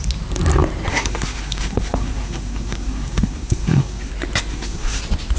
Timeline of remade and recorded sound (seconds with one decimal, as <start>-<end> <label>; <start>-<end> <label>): 0.0-0.9 recorded; 0.9-4.1 remade; 4.1-4.5 recorded; 4.5-5.0 remade; 5.0-5.4 recorded